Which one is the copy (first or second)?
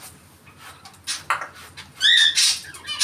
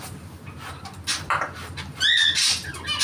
second